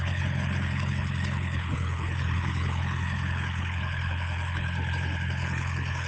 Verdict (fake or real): fake